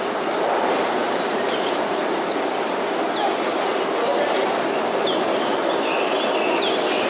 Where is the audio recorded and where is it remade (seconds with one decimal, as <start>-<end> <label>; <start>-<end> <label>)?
0.0-1.0 recorded; 1.0-2.1 remade; 2.1-4.4 recorded; 4.4-5.6 remade; 5.6-7.1 recorded